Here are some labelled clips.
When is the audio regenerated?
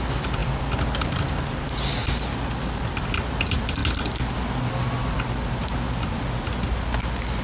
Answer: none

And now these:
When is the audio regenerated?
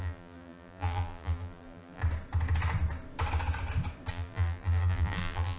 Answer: 0.0-2.0 (vocoder, BigVGAN v2); 4.1-5.6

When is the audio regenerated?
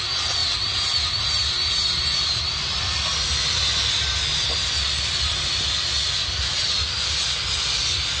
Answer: none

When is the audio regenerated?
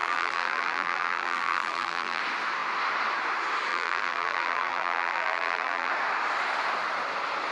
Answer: 0.0-2.2 (vocoder, BigVGAN v2); 3.7-5.9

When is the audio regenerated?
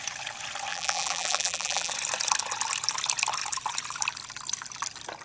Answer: 0.7-1.9 (vocoder, BigVGAN v2)